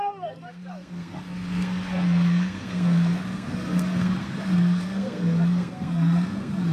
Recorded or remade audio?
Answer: remade